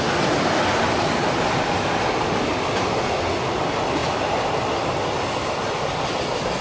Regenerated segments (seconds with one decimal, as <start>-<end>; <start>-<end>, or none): none